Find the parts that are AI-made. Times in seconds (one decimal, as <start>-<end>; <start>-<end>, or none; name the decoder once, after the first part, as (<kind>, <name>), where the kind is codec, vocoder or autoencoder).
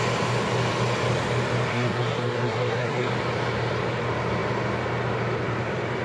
1.7-3.1 (codec, SNAC)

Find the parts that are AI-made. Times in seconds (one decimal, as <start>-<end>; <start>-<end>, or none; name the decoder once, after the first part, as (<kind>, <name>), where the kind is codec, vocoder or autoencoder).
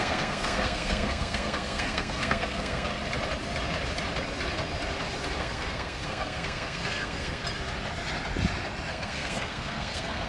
0.0-2.9 (codec, SNAC); 5.4-7.4; 8.9-10.3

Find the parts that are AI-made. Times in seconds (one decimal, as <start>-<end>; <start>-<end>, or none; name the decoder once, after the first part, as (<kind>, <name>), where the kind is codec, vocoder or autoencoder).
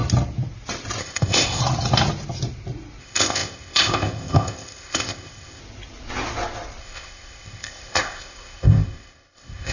1.0-1.6 (codec, ZipCodec); 3.0-5.6; 6.8-9.7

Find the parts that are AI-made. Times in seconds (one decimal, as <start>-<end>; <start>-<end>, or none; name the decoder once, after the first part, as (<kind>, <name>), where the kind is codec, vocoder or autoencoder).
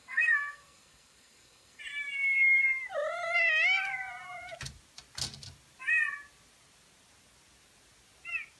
0.0-1.8 (codec, SNAC)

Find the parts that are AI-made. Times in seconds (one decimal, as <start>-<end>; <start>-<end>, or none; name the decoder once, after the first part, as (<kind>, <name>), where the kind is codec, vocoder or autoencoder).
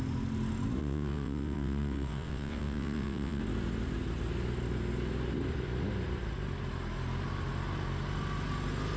0.8-3.4 (vocoder, WaveNeXt)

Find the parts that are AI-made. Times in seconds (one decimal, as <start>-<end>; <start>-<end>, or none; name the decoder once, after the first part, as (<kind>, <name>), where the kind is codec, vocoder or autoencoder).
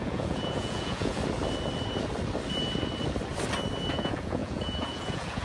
0.0-1.2 (vocoder, Vocos); 3.9-5.4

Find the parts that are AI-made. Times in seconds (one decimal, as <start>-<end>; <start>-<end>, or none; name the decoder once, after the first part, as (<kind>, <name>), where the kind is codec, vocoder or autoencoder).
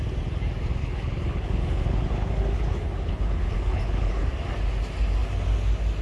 0.8-4.3 (codec, HILCodec)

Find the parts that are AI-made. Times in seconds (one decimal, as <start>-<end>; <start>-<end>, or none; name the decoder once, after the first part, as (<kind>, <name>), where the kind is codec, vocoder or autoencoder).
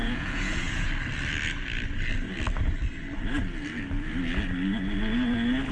0.0-0.9 (vocoder, Vocos)